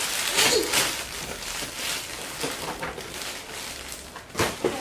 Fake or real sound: real